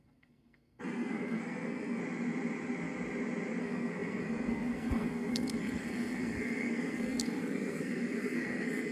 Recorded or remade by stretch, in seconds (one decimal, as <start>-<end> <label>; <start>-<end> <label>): 0.0-2.0 remade; 2.0-3.6 recorded; 3.6-8.9 remade